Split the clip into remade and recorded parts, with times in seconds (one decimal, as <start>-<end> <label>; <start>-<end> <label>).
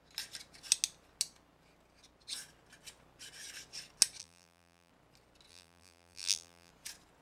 0.0-4.2 recorded; 4.2-4.9 remade; 4.9-5.5 recorded; 5.5-6.7 remade; 6.7-7.2 recorded